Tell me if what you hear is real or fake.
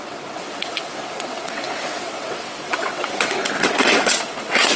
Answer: fake